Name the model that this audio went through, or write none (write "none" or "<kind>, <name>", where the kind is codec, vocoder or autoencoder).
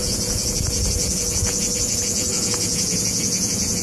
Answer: vocoder, Vocos